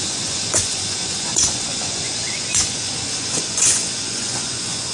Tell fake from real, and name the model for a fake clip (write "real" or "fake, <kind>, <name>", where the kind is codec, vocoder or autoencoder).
fake, vocoder, Vocos